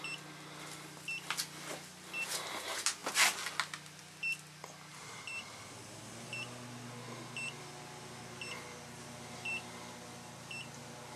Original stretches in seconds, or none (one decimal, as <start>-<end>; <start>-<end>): 0.0-11.2